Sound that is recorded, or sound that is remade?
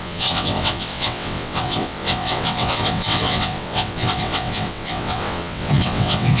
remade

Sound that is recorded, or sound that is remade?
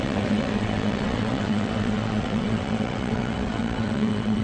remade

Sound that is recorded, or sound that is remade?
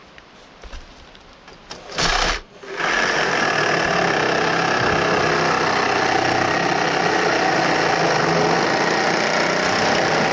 recorded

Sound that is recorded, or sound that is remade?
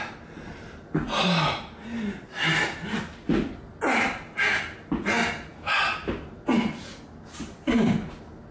recorded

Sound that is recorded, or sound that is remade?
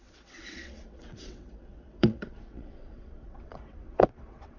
remade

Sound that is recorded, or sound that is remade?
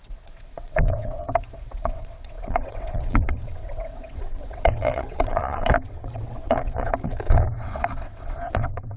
remade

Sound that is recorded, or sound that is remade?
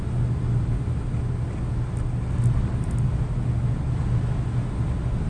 recorded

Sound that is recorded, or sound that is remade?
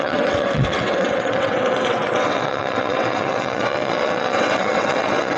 remade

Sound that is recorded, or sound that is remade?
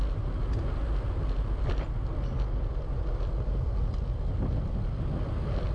recorded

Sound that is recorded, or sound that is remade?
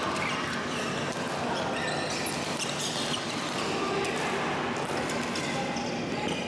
recorded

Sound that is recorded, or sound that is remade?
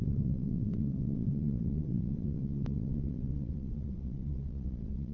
remade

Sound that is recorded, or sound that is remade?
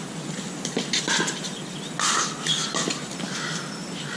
recorded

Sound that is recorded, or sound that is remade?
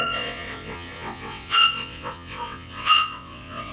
remade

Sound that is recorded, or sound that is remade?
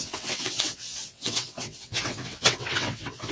remade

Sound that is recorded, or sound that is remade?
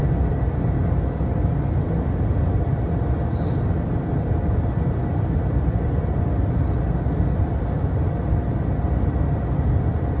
recorded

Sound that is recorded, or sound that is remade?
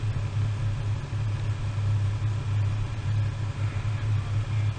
recorded